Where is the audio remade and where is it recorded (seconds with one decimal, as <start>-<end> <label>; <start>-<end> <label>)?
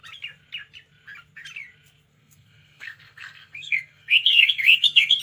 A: 0.0-2.1 recorded; 2.1-5.2 remade